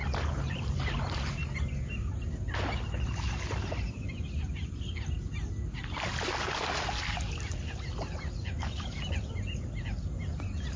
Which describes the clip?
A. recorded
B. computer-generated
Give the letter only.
A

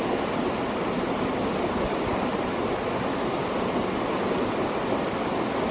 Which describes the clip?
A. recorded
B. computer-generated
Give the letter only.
A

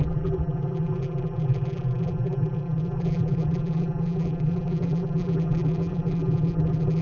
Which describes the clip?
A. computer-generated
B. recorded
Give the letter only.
A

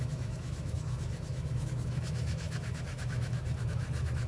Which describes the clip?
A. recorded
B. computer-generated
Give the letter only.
B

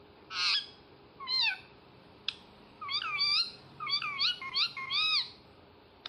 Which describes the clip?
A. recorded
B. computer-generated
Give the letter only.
B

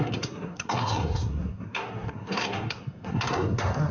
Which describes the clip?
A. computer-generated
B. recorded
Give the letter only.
A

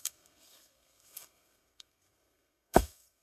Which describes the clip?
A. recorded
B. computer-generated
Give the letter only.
B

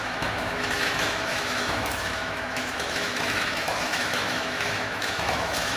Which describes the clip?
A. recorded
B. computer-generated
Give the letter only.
B